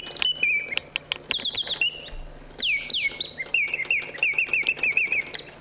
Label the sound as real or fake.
real